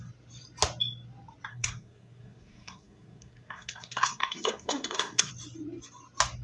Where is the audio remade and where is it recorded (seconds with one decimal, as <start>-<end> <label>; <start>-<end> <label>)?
0.0-1.5 recorded; 1.5-5.3 remade; 5.3-6.4 recorded